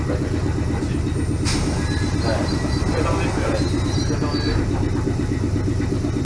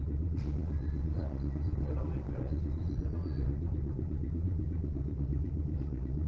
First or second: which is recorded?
first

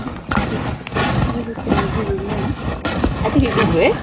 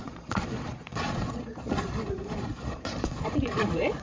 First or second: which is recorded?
first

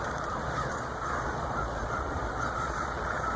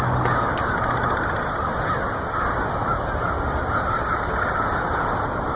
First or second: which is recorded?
second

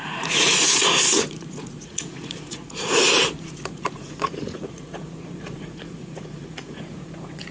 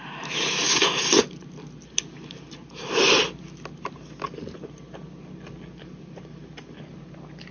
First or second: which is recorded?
second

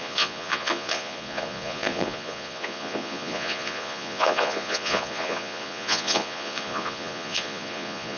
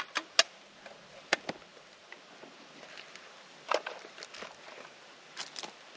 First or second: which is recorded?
second